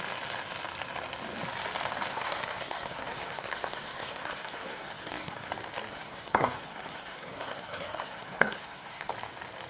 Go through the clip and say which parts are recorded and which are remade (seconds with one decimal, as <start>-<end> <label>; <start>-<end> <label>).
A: 0.0-2.1 recorded; 2.1-5.5 remade; 5.5-5.9 recorded; 5.9-9.1 remade; 9.1-9.7 recorded